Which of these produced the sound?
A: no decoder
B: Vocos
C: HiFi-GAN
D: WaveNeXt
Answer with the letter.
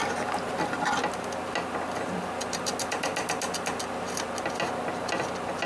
A